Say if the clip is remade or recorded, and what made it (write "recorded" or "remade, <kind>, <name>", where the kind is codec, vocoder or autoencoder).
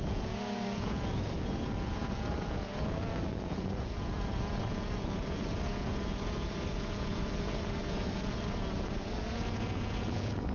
remade, vocoder, Vocos